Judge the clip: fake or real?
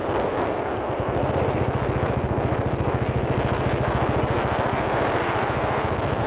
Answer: real